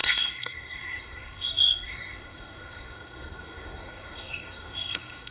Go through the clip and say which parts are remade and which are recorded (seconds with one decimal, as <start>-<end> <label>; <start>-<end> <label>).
0.0-5.3 remade